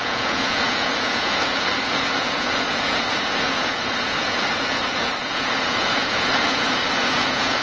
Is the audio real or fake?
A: fake